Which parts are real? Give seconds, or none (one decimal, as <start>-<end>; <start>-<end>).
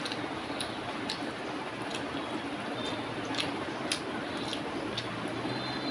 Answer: 0.0-5.9